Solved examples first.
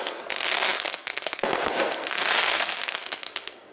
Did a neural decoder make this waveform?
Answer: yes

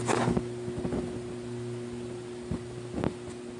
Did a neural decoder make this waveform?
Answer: no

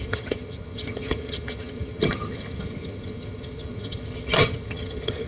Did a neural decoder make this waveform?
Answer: yes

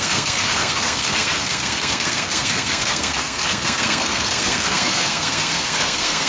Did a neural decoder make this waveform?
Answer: yes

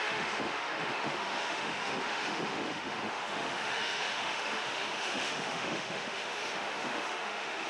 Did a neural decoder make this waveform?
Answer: yes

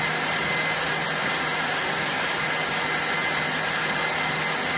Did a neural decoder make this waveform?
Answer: no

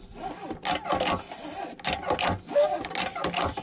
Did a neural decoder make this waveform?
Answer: no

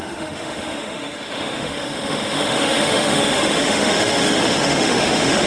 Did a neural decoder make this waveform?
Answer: yes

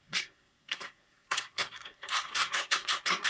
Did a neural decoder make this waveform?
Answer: yes